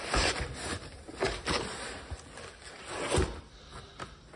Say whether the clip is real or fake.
real